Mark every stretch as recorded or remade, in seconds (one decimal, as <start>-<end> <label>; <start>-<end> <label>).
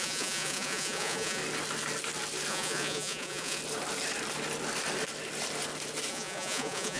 0.0-1.4 remade; 1.4-2.5 recorded; 2.5-3.6 remade; 3.6-6.1 recorded; 6.1-7.0 remade